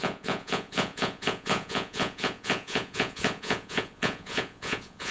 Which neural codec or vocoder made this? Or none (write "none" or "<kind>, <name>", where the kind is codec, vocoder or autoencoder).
vocoder, Vocos